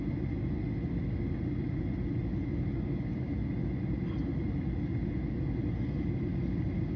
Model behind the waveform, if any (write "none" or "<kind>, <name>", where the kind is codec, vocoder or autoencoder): none